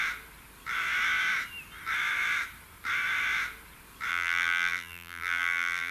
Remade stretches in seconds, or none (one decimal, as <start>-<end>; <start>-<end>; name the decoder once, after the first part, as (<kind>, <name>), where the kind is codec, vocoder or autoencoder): 4.1-5.9 (vocoder, BigVGAN v2)